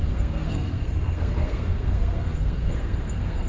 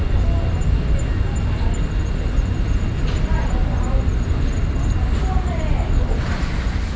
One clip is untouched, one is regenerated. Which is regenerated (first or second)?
first